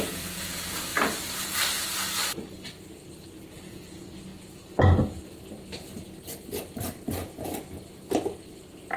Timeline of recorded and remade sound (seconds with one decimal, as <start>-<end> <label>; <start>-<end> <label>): 0.0-0.9 remade; 0.9-3.6 recorded; 3.6-4.3 remade; 4.3-9.0 recorded